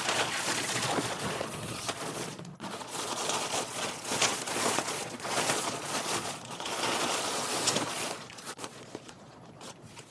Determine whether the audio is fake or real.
fake